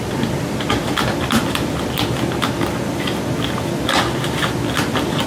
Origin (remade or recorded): recorded